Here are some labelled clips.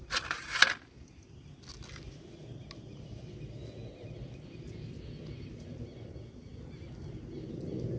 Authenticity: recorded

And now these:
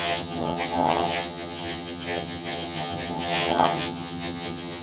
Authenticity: remade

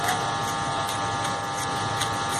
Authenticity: recorded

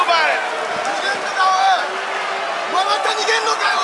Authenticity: recorded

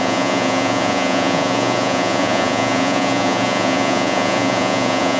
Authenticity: remade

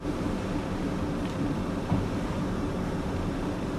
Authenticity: remade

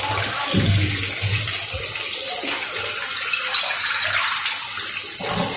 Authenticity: recorded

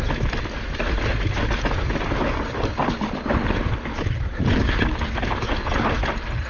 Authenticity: recorded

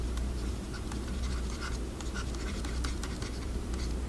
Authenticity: remade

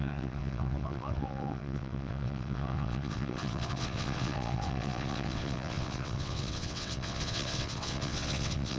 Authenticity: remade